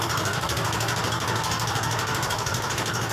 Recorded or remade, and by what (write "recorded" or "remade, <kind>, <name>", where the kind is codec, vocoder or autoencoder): remade, codec, DAC